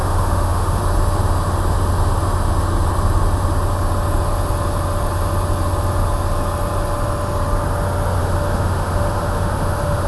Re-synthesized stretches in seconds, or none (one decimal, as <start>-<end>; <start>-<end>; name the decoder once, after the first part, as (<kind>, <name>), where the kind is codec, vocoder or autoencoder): 0.0-0.8 (autoencoder, DAC-VAE); 8.2-10.1